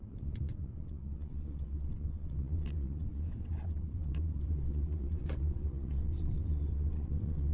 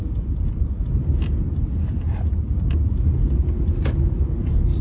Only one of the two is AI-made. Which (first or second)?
first